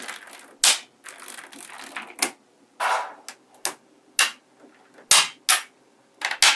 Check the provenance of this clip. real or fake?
real